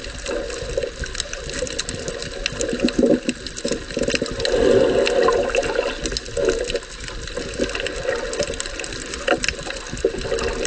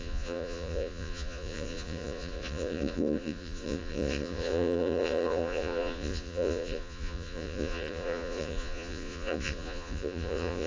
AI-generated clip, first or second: second